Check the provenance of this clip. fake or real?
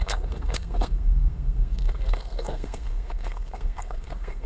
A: fake